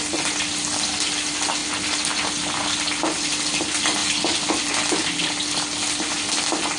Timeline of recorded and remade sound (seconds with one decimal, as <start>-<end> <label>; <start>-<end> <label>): 0.0-6.8 recorded